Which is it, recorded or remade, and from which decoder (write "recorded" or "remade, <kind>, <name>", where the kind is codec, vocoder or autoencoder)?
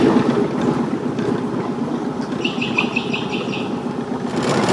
recorded